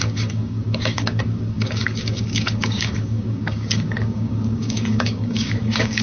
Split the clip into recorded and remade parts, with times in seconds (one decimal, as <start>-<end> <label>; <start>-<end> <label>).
0.0-6.0 remade